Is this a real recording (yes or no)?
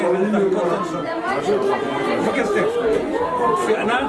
yes